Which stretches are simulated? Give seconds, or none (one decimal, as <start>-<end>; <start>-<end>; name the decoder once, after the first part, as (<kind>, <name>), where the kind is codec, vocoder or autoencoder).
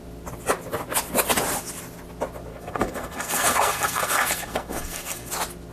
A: 2.5-5.3 (codec, SNAC)